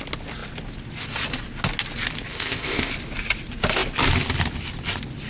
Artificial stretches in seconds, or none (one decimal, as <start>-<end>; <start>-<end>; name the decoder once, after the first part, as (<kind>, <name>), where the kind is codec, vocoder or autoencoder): 2.3-2.9 (codec, ZipCodec)